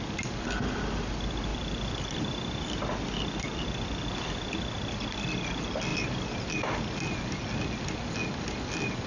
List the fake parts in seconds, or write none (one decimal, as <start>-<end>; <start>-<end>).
1.5-4.9